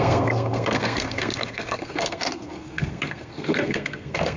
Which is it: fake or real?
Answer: fake